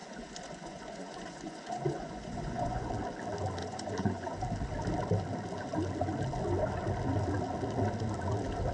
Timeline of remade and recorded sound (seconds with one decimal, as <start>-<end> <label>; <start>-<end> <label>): 0.0-2.9 remade; 2.9-3.6 recorded; 3.6-4.4 remade; 4.4-8.7 recorded